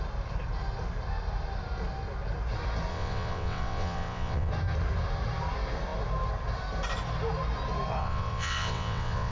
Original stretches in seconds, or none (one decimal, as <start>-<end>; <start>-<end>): 0.0-2.9; 4.5-8.0